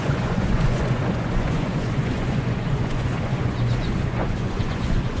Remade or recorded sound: remade